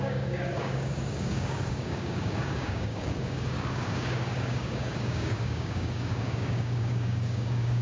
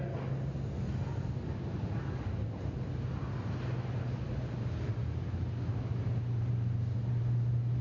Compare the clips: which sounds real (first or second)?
second